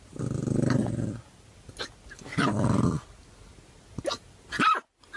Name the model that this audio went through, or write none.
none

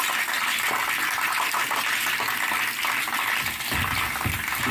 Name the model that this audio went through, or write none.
none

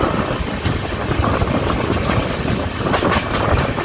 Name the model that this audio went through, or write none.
none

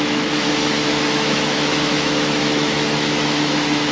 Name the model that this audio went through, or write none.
autoencoder, DAC-VAE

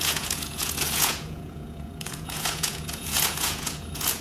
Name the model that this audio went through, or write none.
vocoder, Vocos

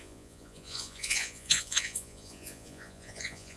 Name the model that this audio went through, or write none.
vocoder, Vocos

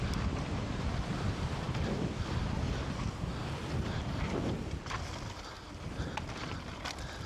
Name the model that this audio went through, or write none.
none